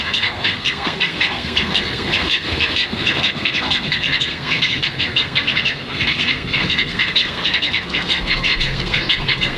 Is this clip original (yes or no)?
no